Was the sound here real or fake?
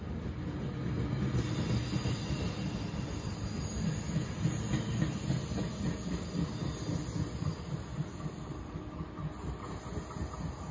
real